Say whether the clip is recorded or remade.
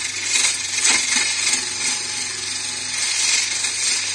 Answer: recorded